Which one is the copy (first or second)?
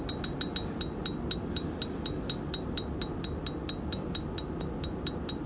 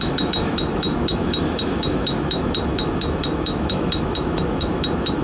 second